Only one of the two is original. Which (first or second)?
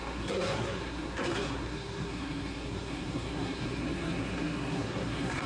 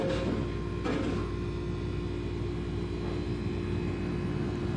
second